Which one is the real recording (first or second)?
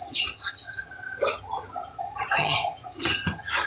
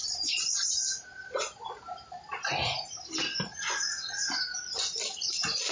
second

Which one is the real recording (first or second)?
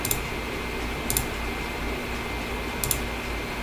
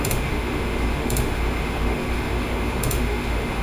first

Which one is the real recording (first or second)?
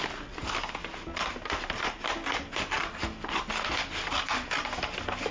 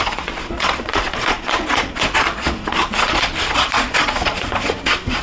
first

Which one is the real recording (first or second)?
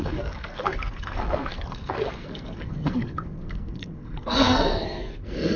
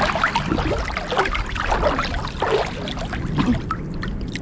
second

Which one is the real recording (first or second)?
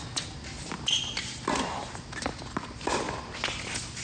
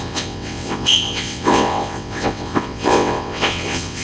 first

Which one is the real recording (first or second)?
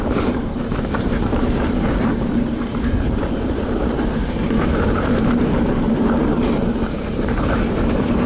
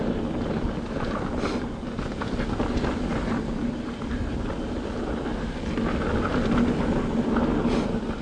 second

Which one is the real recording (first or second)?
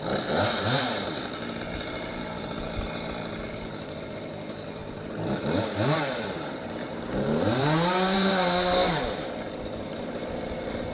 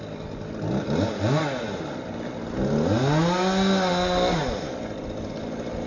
second